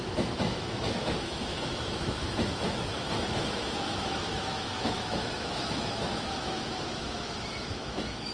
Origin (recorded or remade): remade